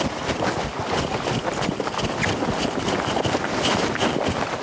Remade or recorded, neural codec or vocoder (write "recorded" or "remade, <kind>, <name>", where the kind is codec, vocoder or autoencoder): recorded